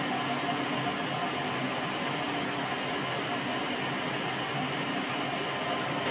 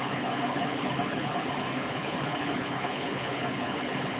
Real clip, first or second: first